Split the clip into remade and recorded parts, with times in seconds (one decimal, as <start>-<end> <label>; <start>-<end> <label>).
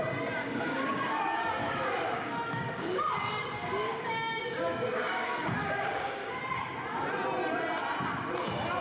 0.0-0.4 recorded; 0.4-1.2 remade; 1.2-1.6 recorded; 1.6-6.4 remade; 6.4-8.8 recorded